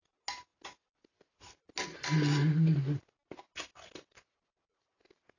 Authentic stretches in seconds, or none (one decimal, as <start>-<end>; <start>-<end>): 0.0-5.4

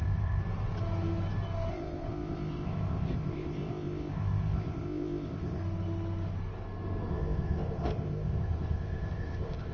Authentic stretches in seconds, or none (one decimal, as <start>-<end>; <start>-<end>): 0.4-1.7; 5.6-7.1